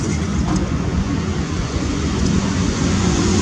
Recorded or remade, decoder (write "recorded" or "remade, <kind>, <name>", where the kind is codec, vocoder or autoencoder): remade, vocoder, Vocos